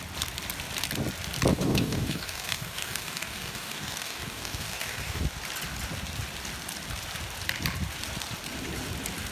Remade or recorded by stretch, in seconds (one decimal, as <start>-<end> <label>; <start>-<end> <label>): 0.0-1.5 recorded; 1.5-5.2 remade; 5.2-9.3 recorded